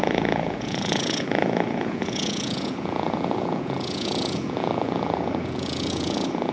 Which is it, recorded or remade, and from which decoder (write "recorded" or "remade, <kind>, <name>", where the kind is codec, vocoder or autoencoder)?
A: remade, vocoder, Vocos